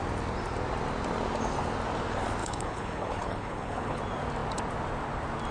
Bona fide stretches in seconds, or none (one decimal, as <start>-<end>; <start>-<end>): 0.0-2.4; 4.0-5.5